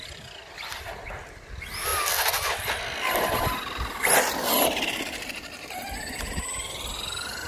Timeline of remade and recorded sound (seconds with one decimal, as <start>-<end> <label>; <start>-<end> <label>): 0.0-7.5 recorded